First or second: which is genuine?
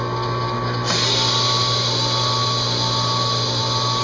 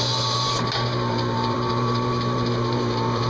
first